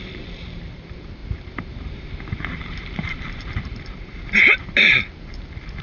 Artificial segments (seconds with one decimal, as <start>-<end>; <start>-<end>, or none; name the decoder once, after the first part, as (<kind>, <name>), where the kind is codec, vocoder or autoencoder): 0.0-5.8 (vocoder, BigVGAN v2)